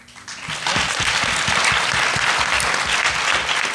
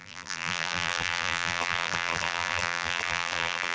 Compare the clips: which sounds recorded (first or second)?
first